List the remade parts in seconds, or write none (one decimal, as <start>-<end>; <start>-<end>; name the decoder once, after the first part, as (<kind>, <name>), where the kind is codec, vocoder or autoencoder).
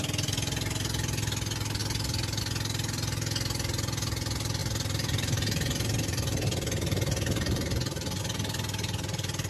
4.6-8.2 (vocoder, BigVGAN v2)